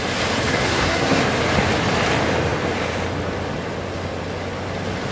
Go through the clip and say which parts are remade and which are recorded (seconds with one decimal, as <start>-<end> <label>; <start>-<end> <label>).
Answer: 0.0-0.5 recorded; 0.5-1.2 remade; 1.2-5.1 recorded